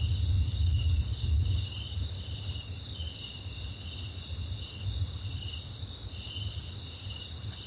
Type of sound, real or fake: real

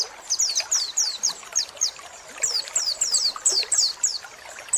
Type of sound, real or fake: real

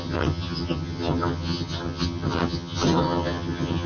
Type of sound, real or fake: fake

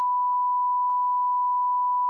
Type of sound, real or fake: real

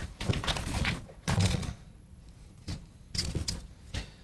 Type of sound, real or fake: fake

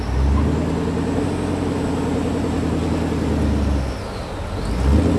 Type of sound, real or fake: real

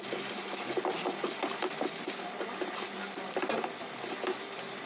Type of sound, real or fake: real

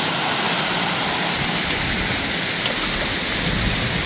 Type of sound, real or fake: real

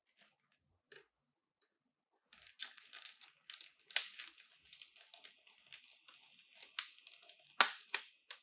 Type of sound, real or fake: real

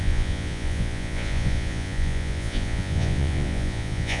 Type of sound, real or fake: fake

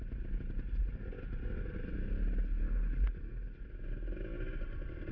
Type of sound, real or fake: real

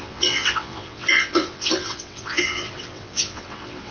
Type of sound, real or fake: fake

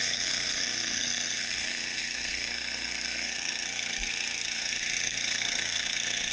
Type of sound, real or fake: fake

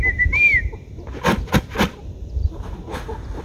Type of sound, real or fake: real